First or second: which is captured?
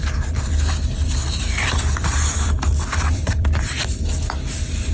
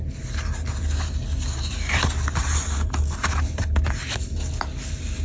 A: second